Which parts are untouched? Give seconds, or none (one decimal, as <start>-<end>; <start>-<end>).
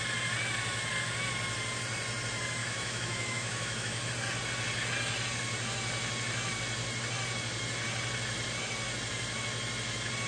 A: 0.0-2.6; 4.1-10.3